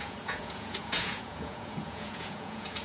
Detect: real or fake fake